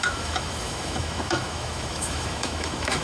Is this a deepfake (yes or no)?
yes